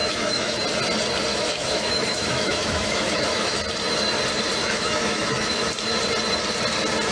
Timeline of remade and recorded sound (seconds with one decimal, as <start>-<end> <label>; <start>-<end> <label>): 0.0-0.6 remade; 0.6-1.3 recorded; 1.3-3.6 remade; 3.6-4.6 recorded; 4.6-5.7 remade; 5.7-7.1 recorded